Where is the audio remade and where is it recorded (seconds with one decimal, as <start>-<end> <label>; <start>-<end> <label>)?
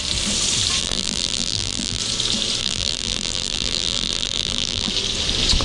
0.0-0.8 recorded; 0.8-2.0 remade; 2.0-2.6 recorded; 2.6-4.9 remade; 4.9-5.6 recorded